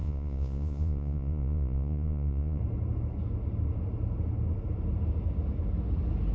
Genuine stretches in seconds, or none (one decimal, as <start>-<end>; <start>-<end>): 2.6-6.3